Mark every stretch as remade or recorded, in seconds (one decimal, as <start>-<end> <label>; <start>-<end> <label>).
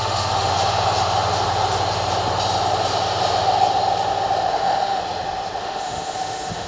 0.0-0.5 remade; 0.5-4.5 recorded; 4.5-5.0 remade; 5.0-5.6 recorded; 5.6-6.7 remade